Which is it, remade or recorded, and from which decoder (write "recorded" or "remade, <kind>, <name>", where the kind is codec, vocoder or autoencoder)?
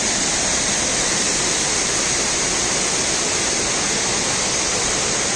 recorded